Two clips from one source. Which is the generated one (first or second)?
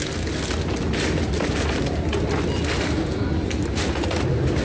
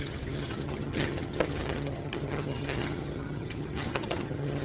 second